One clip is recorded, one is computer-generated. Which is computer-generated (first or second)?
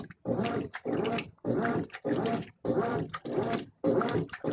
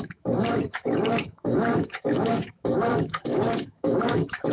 second